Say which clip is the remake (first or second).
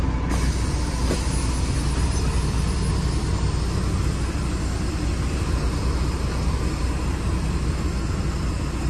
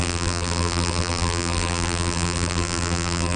second